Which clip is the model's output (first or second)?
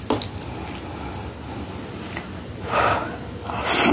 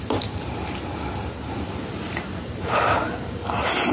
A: second